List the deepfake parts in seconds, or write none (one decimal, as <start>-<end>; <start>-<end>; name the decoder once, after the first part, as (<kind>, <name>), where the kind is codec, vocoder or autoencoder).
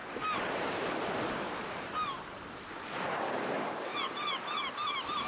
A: none